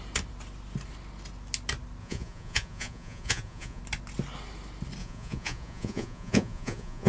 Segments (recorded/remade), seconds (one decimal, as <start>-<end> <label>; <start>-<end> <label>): 0.0-2.0 recorded; 2.0-3.8 remade; 3.8-5.0 recorded; 5.0-7.1 remade